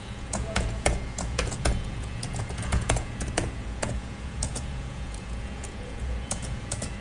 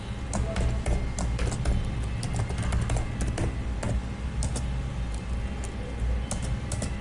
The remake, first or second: first